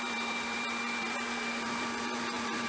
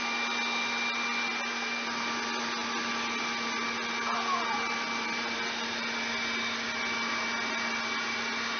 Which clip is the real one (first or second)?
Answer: second